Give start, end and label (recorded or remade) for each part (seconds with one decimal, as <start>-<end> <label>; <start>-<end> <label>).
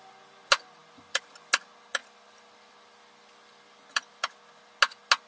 0.0-0.8 recorded; 0.8-1.4 remade; 1.4-2.0 recorded; 2.0-4.0 remade; 4.0-5.3 recorded